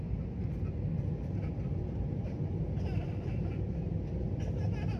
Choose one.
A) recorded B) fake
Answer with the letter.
A